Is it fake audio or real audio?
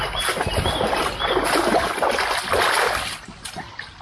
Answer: real